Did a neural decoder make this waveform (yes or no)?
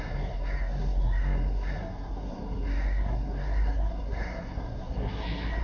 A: yes